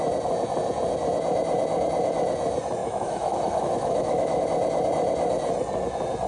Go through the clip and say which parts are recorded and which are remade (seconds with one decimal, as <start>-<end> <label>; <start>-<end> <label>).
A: 0.0-2.8 recorded; 2.8-4.4 remade; 4.4-6.3 recorded